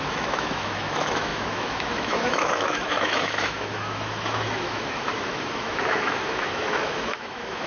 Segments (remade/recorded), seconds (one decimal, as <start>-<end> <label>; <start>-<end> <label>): 0.0-7.7 remade